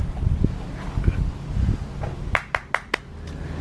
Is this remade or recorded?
recorded